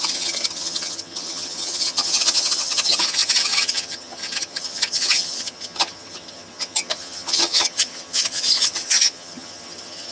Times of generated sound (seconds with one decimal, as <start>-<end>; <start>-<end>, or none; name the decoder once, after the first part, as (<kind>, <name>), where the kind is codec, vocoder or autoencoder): 0.0-10.1 (vocoder, HiFi-GAN)